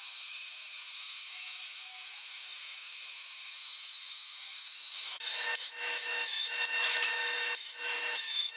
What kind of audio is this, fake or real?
fake